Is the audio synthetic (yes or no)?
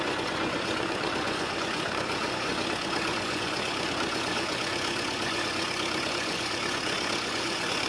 yes